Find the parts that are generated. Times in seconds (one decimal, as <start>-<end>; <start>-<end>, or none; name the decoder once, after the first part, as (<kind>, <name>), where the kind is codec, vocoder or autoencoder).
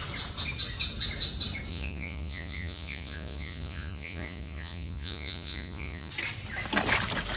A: 1.7-6.1 (vocoder, Vocos)